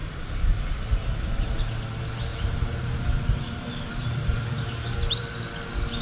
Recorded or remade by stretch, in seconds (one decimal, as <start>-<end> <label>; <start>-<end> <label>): 0.0-2.3 recorded; 2.3-5.3 remade; 5.3-6.0 recorded